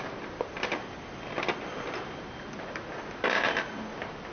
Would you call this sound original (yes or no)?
yes